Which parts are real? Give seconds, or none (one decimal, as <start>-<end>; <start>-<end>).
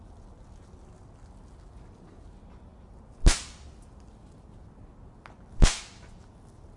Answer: 0.0-6.8